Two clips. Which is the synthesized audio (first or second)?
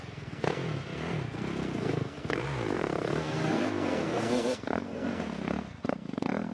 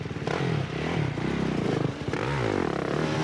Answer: first